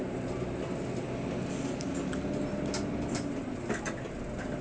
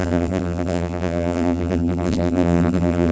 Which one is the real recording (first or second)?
first